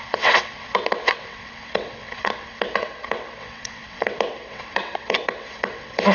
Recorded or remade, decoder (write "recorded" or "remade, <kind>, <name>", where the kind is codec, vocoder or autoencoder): remade, vocoder, WaveNeXt